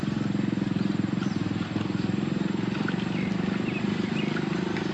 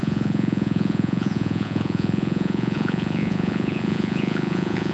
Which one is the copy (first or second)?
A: second